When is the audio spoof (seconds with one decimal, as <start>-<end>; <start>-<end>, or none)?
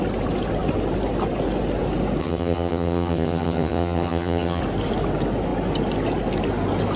2.2-4.6